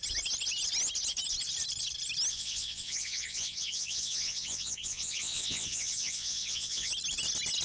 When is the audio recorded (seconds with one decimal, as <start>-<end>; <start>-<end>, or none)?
0.0-2.3; 6.9-7.6